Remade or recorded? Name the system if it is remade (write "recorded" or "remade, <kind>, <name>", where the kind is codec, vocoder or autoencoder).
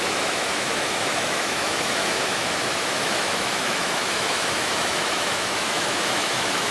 remade, autoencoder, DAC-VAE